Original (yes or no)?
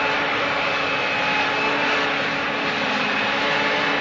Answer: yes